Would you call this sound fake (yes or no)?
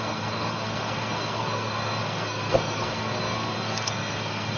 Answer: yes